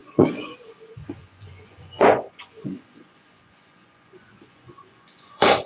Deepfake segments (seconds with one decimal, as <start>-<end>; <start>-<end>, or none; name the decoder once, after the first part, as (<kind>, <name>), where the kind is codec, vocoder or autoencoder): 0.0-5.7 (vocoder, Vocos)